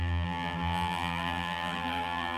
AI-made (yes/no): yes